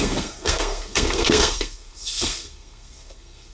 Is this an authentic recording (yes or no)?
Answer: no